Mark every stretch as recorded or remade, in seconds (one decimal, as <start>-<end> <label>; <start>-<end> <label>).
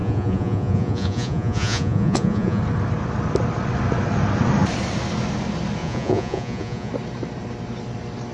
0.0-2.6 remade; 2.6-5.8 recorded; 5.8-6.9 remade; 6.9-8.3 recorded